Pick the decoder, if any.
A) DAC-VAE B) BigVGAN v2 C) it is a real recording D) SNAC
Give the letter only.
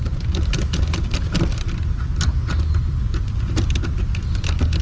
C